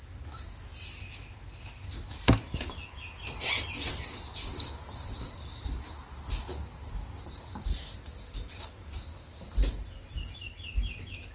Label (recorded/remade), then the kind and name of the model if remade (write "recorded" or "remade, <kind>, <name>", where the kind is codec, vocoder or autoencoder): recorded